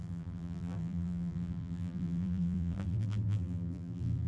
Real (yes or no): no